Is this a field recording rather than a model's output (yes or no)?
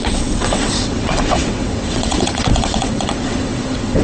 no